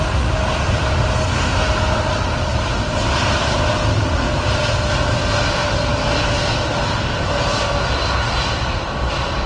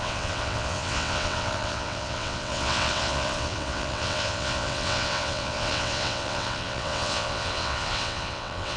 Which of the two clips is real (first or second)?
first